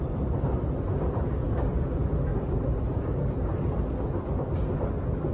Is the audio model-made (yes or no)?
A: no